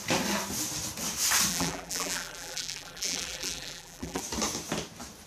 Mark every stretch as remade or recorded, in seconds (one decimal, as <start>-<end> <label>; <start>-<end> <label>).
0.0-1.5 recorded; 1.5-4.2 remade; 4.2-5.3 recorded